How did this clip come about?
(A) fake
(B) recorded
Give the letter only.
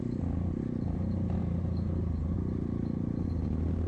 B